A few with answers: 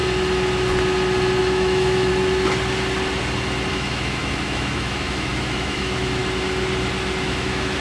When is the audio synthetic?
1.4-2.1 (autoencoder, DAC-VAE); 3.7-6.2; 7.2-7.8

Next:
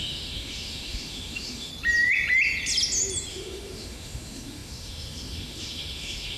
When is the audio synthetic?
0.0-1.7 (autoencoder, DAC-VAE); 3.3-6.4

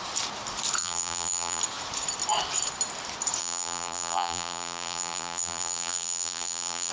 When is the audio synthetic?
0.8-1.6 (vocoder, BigVGAN v2); 3.4-6.9

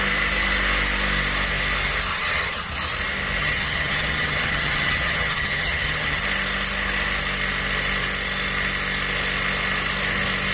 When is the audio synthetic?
2.1-2.7 (vocoder, HiFi-GAN); 3.4-6.2

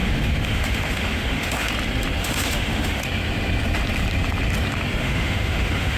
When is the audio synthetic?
0.0-1.7 (autoencoder, DAC-VAE); 2.2-3.0; 5.0-6.0